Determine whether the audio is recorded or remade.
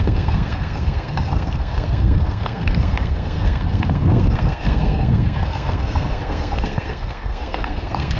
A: remade